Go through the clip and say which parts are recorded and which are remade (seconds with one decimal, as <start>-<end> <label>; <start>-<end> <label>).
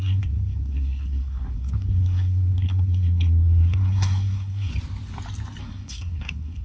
0.0-4.7 remade; 4.7-5.6 recorded; 5.6-6.6 remade